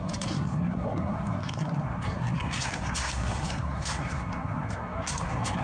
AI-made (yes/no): yes